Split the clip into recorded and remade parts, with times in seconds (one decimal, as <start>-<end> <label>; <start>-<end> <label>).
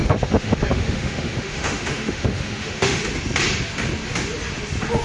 0.0-3.0 remade; 3.0-5.0 recorded